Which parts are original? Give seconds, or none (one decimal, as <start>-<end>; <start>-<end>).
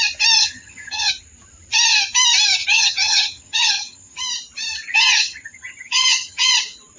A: 0.0-0.4; 1.1-2.6; 4.2-4.9; 6.5-7.0